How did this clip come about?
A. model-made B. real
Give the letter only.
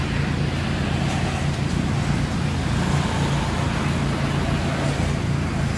B